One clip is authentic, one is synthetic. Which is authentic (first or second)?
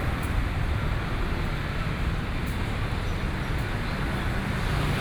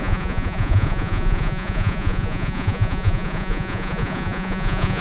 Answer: first